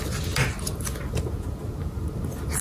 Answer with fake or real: real